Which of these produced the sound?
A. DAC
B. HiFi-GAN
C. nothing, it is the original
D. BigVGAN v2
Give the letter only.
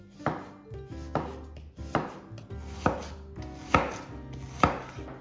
C